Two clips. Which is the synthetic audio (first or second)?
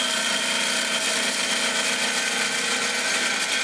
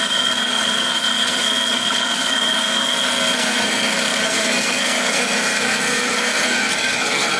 second